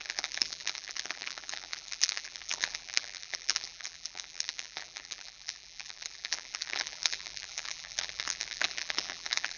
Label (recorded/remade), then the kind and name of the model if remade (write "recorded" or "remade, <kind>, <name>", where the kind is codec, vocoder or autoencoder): remade, vocoder, BigVGAN v2